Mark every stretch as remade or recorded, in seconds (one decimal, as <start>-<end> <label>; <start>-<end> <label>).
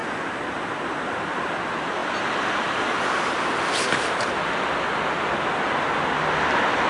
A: 0.0-6.9 recorded